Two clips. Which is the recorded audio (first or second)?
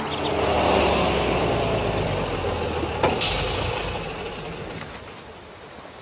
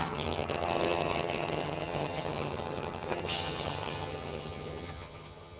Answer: first